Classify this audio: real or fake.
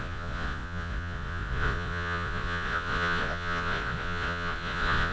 fake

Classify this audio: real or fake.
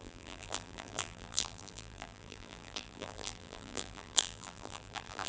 fake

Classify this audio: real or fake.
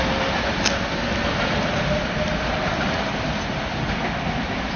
real